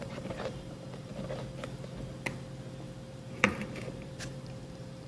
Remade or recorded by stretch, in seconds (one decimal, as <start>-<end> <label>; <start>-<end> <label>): 0.0-1.1 remade; 1.1-3.1 recorded; 3.1-5.1 remade

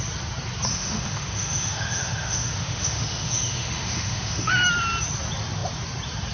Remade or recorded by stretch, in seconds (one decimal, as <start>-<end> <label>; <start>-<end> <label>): 0.0-0.7 recorded; 0.7-4.5 remade; 4.5-6.3 recorded

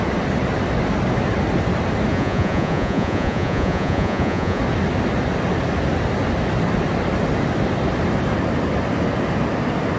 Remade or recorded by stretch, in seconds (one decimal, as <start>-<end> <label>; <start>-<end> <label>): 0.0-2.1 recorded; 2.1-4.6 remade; 4.6-10.0 recorded

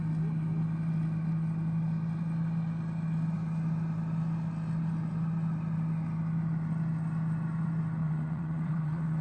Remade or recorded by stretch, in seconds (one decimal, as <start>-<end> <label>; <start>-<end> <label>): 0.0-8.0 recorded; 8.0-9.2 remade

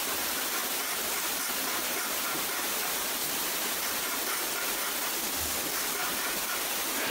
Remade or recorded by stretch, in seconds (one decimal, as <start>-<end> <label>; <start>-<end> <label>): 0.0-0.6 recorded; 0.6-1.3 remade; 1.3-1.8 recorded; 1.8-2.8 remade; 2.8-3.2 recorded; 3.2-4.1 remade; 4.1-6.0 recorded; 6.0-7.1 remade

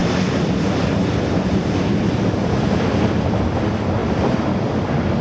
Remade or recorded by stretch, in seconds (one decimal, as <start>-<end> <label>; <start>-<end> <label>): 0.0-2.1 remade; 2.1-4.0 recorded; 4.0-4.7 remade; 4.7-5.2 recorded

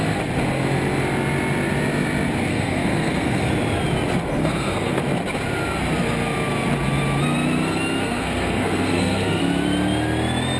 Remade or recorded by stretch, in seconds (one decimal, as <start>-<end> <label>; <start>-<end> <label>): 0.0-2.5 recorded; 2.5-3.4 remade; 3.4-4.4 recorded; 4.4-5.0 remade; 5.0-8.0 recorded; 8.0-9.4 remade; 9.4-10.6 recorded

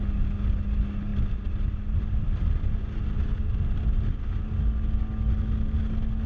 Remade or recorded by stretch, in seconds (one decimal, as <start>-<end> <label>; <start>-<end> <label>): 0.0-1.1 recorded; 1.1-2.2 remade; 2.2-6.3 recorded